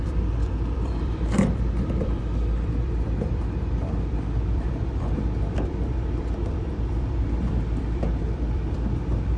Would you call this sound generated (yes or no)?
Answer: yes